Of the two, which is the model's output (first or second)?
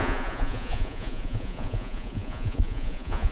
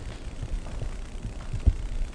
first